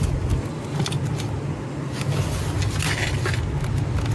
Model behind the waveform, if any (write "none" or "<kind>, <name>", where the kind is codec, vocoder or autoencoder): none